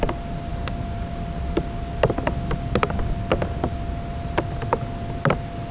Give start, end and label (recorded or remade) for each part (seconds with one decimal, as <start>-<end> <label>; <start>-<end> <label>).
0.0-5.7 recorded

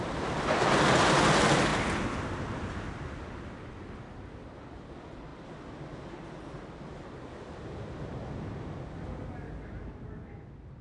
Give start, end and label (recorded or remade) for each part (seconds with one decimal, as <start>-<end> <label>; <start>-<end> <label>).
0.0-10.8 recorded

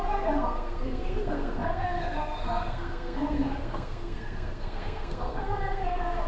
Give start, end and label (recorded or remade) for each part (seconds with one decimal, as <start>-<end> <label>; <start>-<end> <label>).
0.0-6.3 remade

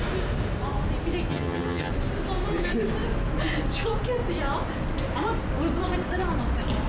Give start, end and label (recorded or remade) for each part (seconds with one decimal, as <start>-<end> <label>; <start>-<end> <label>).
0.0-1.3 recorded; 1.3-1.9 remade; 1.9-6.9 recorded